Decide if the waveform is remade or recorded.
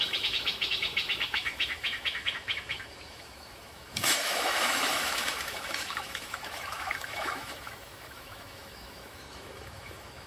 remade